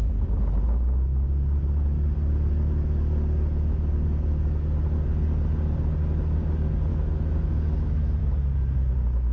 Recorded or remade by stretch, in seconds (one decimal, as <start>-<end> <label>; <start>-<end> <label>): 0.0-6.9 recorded; 6.9-8.2 remade; 8.2-9.3 recorded